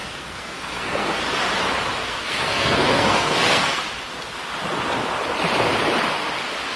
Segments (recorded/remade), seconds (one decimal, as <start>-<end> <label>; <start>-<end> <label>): 0.0-1.2 remade; 1.2-2.0 recorded; 2.0-3.8 remade; 3.8-6.8 recorded